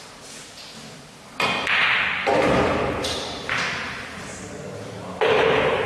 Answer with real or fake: real